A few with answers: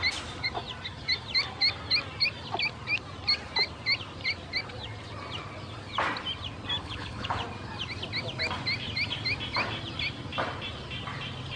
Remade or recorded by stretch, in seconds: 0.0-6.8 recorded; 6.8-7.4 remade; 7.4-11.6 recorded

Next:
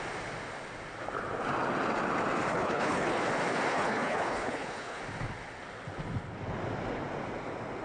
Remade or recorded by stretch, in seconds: 0.0-2.5 recorded; 2.5-3.2 remade; 3.2-3.7 recorded; 3.7-5.0 remade; 5.0-7.8 recorded

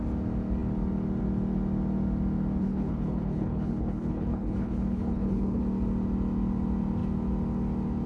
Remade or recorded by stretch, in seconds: 0.0-2.6 recorded; 2.6-5.6 remade; 5.6-8.1 recorded

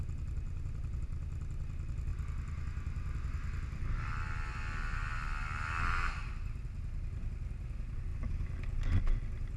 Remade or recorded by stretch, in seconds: 0.0-9.6 recorded

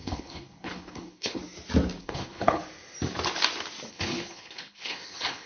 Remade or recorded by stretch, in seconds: 0.0-1.4 remade; 1.4-2.0 recorded; 2.0-2.6 remade; 2.6-3.9 recorded; 3.9-5.5 remade